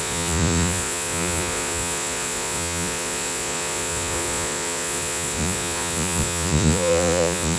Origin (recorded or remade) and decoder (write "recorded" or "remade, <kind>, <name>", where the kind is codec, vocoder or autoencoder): remade, vocoder, Vocos